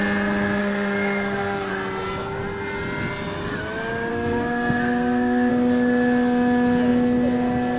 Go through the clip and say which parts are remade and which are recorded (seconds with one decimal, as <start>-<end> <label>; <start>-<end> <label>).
0.0-0.6 recorded; 0.6-1.7 remade; 1.7-4.1 recorded; 4.1-5.5 remade; 5.5-7.8 recorded